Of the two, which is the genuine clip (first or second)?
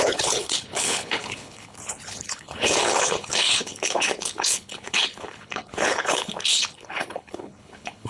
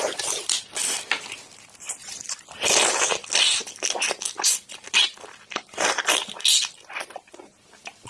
second